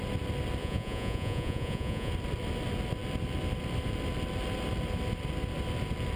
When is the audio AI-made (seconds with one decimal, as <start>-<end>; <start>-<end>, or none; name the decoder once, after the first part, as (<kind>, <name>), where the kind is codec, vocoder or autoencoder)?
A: 0.6-2.1 (vocoder, Vocos)